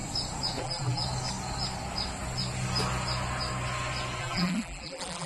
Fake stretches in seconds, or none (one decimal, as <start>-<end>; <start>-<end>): 0.6-1.0; 4.2-5.3